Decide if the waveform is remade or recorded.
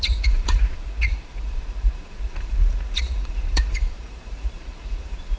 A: remade